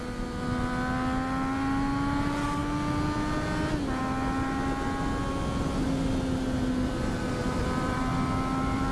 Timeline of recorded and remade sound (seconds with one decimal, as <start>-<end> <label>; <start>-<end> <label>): 0.0-7.4 recorded; 7.4-8.0 remade; 8.0-8.9 recorded